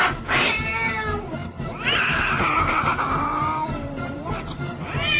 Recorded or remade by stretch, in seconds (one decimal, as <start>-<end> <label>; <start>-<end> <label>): 0.0-5.2 remade